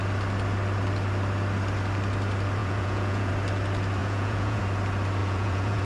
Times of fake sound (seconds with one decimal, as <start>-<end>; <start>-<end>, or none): 2.6-3.3; 4.0-4.6; 5.2-5.8